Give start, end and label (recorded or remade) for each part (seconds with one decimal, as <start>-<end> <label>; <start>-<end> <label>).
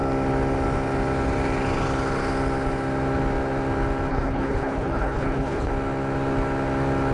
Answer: 0.0-4.1 recorded; 4.1-5.7 remade; 5.7-7.1 recorded